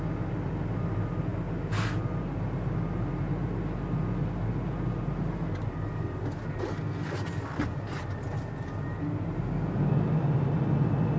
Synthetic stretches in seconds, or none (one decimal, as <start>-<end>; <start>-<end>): none